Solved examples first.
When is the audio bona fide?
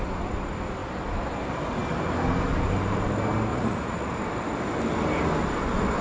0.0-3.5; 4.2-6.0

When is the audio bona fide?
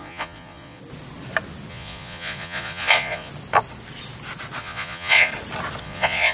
0.8-1.7; 3.3-4.6; 5.3-5.8